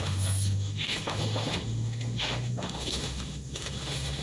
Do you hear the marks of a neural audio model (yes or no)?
yes